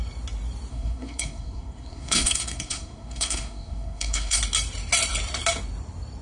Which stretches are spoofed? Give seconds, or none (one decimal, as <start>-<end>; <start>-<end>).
0.7-4.4